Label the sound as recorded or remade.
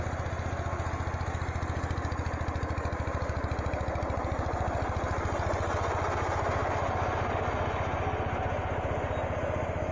recorded